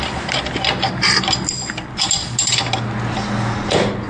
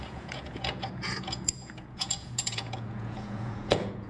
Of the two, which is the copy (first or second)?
second